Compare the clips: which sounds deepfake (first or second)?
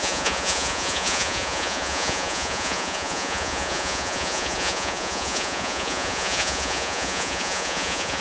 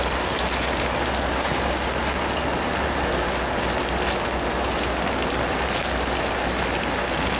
first